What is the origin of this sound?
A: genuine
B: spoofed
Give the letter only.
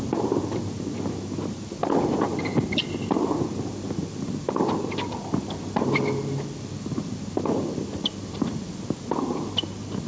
A